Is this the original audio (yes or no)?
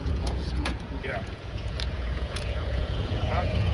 no